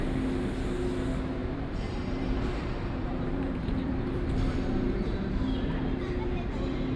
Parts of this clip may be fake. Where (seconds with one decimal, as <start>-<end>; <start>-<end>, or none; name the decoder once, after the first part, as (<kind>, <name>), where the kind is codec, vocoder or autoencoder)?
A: 1.4-5.4 (vocoder, BigVGAN v2)